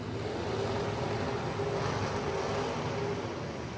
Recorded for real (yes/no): yes